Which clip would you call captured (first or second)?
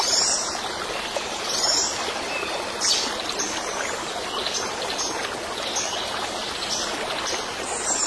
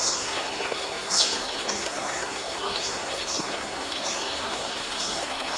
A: first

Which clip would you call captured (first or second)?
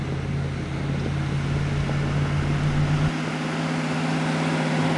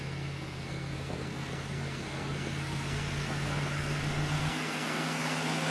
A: first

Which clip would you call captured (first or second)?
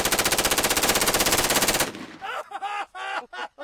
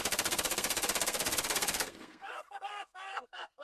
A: first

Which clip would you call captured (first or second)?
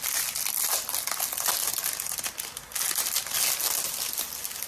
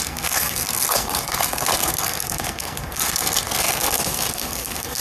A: first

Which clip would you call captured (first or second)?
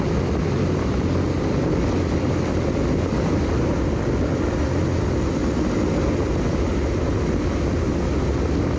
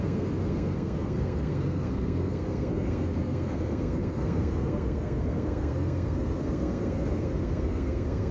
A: first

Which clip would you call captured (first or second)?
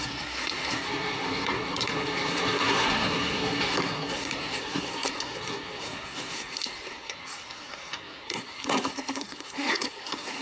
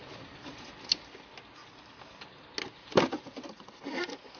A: second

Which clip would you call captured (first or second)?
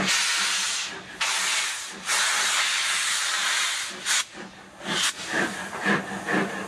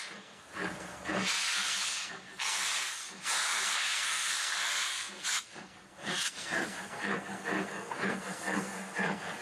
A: first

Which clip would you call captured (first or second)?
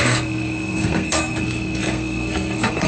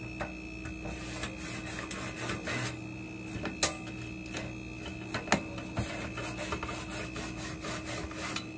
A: second